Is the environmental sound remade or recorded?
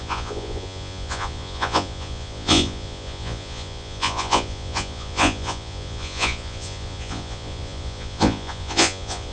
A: remade